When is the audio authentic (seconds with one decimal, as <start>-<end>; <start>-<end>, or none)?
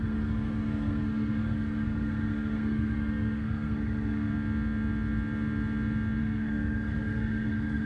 4.3-6.2